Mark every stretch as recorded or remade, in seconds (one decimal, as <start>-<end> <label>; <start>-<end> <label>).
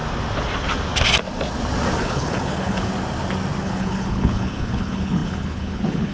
0.0-2.0 recorded; 2.0-2.9 remade; 2.9-3.6 recorded; 3.6-6.1 remade